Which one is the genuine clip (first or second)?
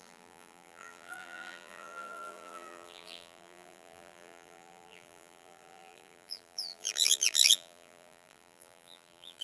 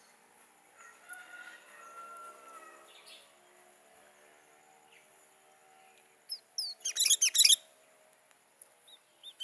second